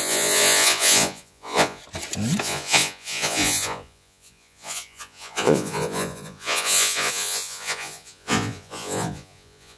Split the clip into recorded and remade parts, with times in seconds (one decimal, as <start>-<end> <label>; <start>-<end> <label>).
0.0-1.8 remade; 1.8-2.4 recorded; 2.4-9.8 remade